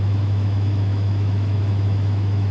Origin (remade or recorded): remade